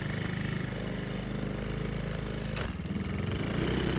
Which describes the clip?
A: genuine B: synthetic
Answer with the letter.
A